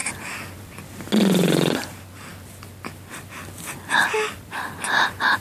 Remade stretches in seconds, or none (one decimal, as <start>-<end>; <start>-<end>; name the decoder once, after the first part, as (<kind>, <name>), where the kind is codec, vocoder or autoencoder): none